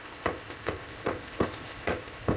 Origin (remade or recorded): remade